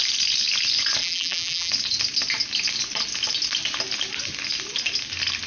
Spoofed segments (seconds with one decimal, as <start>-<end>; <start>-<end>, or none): 1.0-1.7